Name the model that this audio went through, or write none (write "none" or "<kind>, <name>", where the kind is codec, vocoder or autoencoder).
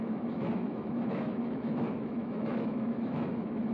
autoencoder, DAC-VAE